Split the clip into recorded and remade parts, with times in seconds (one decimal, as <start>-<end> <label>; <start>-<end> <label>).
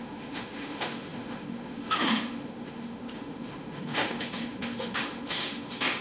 0.0-6.0 remade